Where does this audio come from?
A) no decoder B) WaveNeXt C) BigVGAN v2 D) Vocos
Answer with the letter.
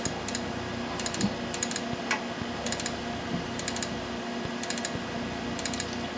A